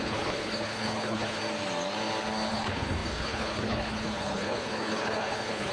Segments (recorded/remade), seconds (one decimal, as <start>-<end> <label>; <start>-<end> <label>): 0.0-1.4 remade; 1.4-2.5 recorded; 2.5-5.7 remade